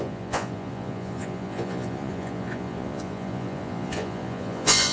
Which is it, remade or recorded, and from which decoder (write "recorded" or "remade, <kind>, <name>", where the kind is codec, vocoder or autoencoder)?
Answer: remade, vocoder, Vocos